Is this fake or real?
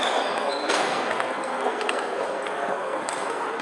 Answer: fake